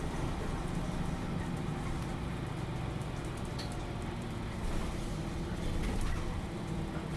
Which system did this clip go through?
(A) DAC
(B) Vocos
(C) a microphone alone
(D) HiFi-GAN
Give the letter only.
C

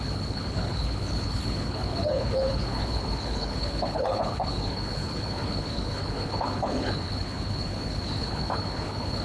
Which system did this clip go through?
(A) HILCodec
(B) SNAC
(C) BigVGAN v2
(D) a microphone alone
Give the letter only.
A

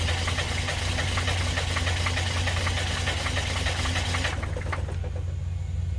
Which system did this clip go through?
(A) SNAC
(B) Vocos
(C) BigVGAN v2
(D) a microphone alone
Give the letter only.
D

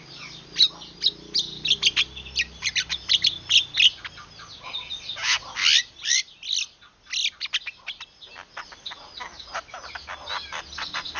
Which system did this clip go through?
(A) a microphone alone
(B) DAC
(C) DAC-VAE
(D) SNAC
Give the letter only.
A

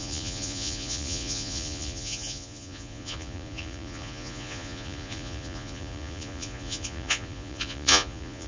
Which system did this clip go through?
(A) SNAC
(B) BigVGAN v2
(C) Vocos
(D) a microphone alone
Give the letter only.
C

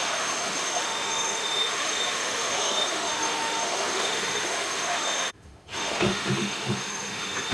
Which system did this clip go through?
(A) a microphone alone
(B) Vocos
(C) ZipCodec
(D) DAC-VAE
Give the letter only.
D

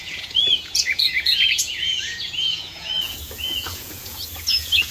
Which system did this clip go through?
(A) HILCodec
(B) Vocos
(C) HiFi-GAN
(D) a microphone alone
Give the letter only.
B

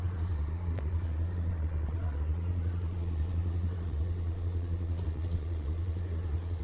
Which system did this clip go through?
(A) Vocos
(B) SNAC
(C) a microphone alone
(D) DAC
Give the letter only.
A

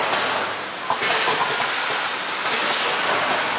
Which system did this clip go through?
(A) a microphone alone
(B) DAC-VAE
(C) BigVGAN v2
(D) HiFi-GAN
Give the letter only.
A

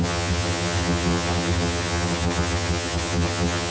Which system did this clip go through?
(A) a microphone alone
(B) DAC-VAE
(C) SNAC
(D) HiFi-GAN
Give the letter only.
D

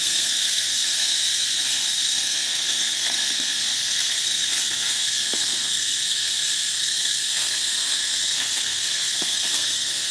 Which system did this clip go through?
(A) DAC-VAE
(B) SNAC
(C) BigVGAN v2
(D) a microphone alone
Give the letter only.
B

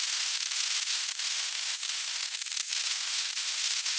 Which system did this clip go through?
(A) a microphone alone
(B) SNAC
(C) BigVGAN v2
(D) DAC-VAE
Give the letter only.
D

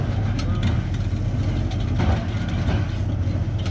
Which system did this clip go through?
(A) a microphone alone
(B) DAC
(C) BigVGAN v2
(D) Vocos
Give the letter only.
A